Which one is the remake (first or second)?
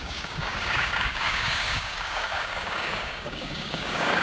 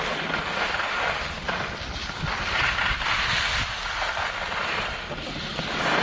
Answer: first